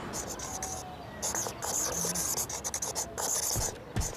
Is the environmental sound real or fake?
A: real